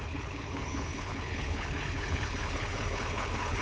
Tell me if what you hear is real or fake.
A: fake